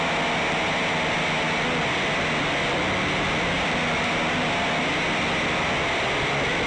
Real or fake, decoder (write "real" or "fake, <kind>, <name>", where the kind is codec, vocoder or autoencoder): real